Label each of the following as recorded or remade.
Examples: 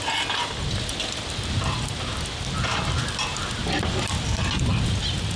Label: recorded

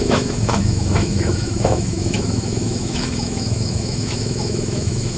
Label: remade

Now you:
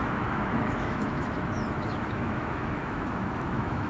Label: remade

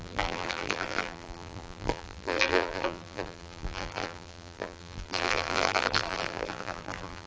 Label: remade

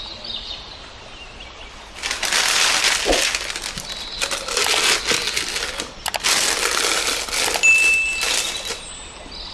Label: recorded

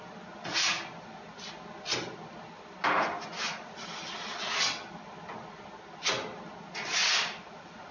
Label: recorded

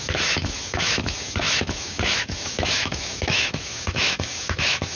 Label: remade